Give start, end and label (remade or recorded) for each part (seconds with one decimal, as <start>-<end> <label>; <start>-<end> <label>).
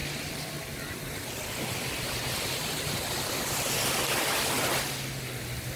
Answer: 0.0-5.8 recorded